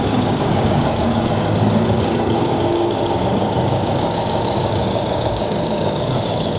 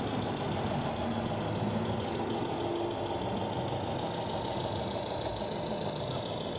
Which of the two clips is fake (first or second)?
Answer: first